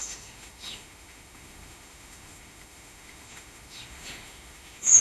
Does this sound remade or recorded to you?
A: remade